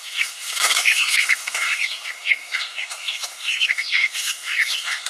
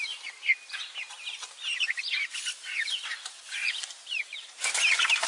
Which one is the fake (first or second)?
first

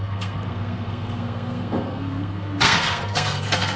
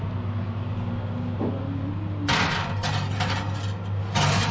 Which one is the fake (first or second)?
first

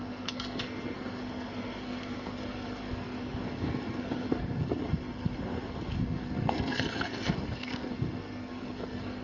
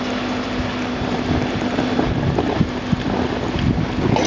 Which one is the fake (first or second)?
first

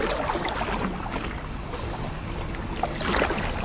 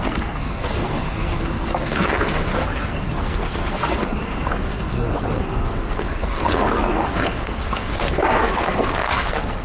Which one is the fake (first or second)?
second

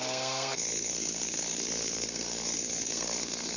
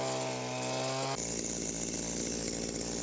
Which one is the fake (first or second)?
first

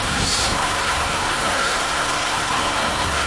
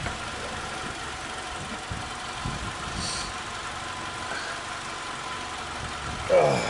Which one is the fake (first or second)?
first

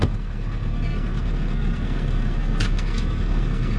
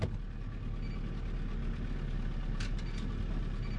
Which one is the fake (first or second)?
first